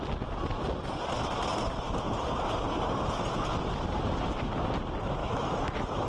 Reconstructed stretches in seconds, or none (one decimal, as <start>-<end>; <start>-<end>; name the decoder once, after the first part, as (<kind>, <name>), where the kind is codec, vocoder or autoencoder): 5.2-6.1 (autoencoder, DAC-VAE)